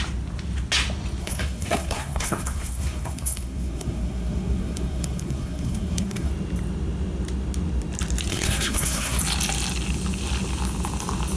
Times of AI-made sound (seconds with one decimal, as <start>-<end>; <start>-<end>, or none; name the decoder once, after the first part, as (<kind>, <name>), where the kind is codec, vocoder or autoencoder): 1.2-6.3 (codec, SNAC); 8.3-9.2